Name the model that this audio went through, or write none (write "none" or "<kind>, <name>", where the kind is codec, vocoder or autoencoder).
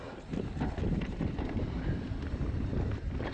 none